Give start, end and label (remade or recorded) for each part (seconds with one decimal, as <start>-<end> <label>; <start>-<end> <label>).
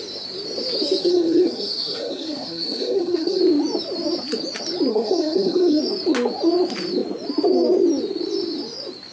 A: 0.0-1.0 recorded; 1.0-3.4 remade; 3.4-4.9 recorded; 4.9-5.8 remade; 5.8-9.1 recorded